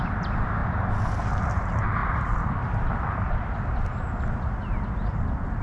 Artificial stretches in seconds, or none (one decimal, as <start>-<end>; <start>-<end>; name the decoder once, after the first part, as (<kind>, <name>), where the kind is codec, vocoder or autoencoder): none